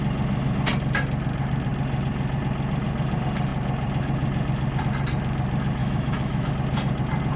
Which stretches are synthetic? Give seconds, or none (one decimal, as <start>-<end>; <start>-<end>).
5.8-6.5